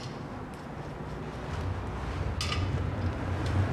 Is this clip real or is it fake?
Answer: real